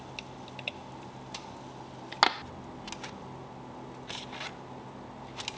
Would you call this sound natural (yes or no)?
yes